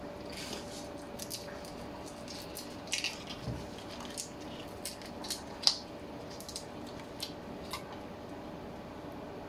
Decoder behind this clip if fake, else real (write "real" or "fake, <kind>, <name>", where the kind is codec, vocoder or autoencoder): real